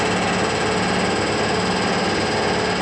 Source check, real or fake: real